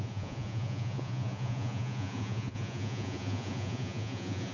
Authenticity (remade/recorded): remade